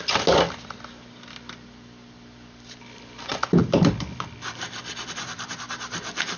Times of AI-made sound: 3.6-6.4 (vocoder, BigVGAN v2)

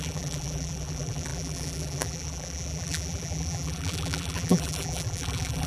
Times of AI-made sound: 0.0-5.7 (vocoder, BigVGAN v2)

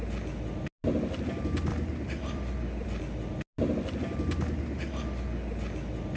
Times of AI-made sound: 1.7-3.0 (vocoder, BigVGAN v2)

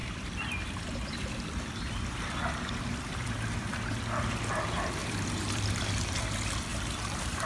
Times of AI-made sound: 0.0-4.5 (vocoder, BigVGAN v2); 5.0-6.2